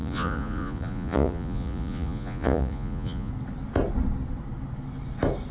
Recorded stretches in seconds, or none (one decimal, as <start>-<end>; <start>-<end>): 3.3-5.5